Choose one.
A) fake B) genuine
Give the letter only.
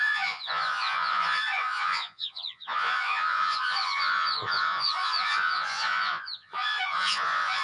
A